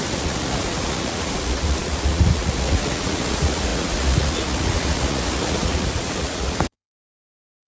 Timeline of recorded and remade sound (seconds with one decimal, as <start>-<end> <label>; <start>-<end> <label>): 0.0-7.7 remade